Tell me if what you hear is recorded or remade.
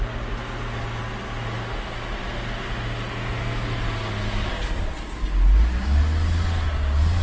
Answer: recorded